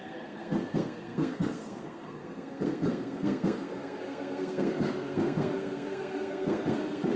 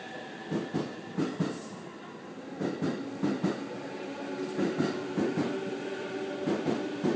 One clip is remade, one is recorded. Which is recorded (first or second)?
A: second